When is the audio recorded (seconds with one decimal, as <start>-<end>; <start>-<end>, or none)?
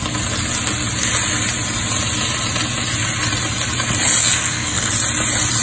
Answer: 0.0-4.2; 4.9-5.6